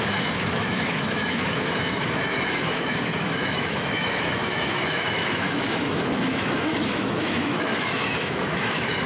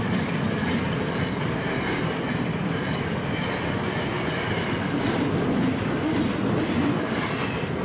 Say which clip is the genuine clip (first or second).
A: second